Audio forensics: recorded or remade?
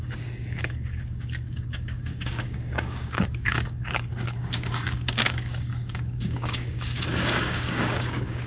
remade